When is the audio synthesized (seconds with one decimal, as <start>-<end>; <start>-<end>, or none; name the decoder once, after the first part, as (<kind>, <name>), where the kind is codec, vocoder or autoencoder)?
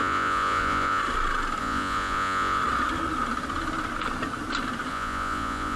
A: 0.0-1.0 (vocoder, Vocos); 1.6-2.6; 4.9-5.8